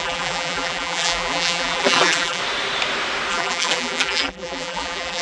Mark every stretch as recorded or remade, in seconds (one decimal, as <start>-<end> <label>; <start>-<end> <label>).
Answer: 0.0-2.4 remade; 2.4-3.3 recorded; 3.3-5.2 remade